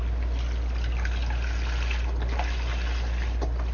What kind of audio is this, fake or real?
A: real